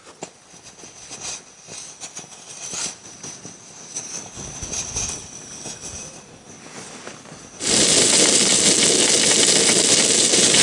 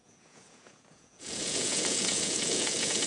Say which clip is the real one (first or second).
first